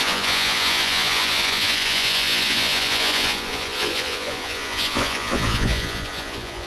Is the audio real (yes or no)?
no